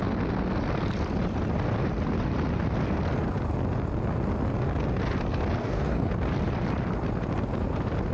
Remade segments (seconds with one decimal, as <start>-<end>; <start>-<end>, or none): 5.6-6.1